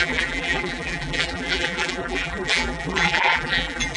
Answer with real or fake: fake